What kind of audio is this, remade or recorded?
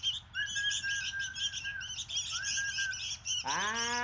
recorded